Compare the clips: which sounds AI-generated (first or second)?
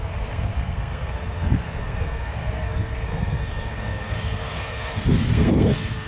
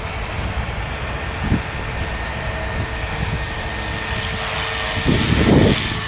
first